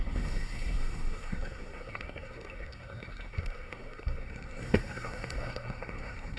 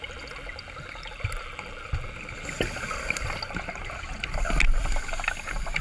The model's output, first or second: first